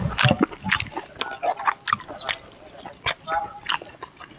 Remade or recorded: recorded